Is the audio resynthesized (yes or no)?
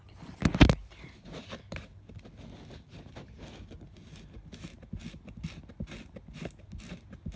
no